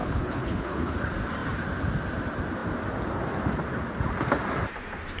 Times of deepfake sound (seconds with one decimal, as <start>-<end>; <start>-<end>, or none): 0.0-0.9